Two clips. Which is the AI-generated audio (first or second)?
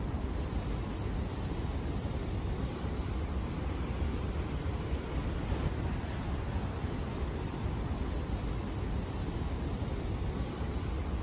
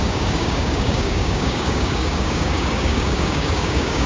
second